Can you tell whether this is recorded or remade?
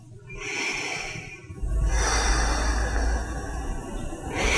recorded